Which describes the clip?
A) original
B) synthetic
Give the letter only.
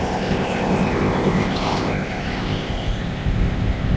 B